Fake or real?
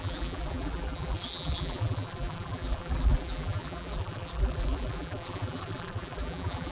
fake